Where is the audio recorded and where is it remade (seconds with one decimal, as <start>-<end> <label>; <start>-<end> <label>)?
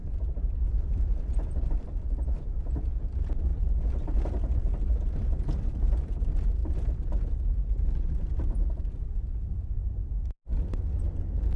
0.0-11.6 remade